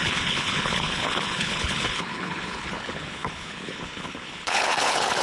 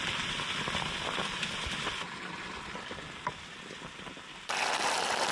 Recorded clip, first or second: second